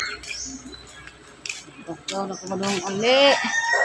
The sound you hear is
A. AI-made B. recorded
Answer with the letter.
B